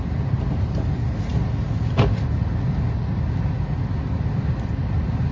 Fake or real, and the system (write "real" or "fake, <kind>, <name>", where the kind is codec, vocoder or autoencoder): real